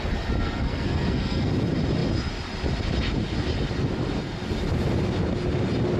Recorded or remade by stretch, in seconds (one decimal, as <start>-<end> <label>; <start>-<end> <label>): 0.0-0.4 recorded; 0.4-1.5 remade; 1.5-6.0 recorded